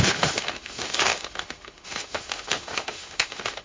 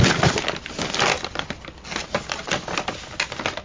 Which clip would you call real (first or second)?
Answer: second